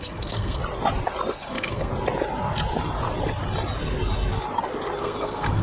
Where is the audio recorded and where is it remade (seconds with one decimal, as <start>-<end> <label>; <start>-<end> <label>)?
0.0-0.6 remade; 0.6-1.3 recorded; 1.3-1.9 remade; 1.9-5.0 recorded; 5.0-5.6 remade